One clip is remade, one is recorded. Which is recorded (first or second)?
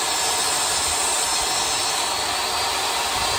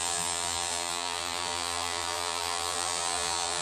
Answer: first